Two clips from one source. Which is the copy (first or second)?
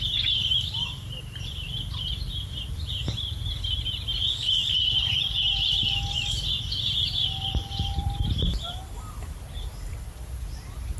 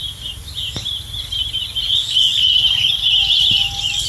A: first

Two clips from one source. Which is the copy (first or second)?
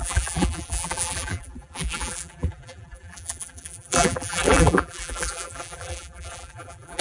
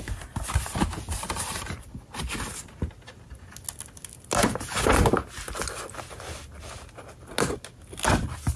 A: first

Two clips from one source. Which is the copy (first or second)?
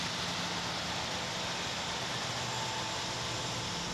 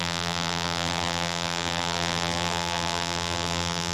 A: second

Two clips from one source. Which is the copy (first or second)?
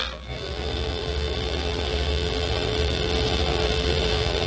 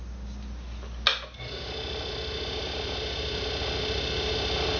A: first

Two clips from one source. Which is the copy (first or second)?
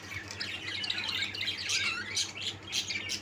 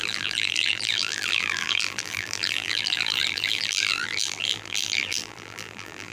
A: second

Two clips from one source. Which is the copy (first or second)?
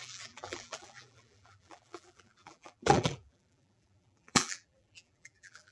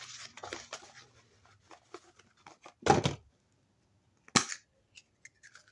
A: first